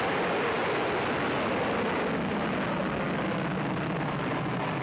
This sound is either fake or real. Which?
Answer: real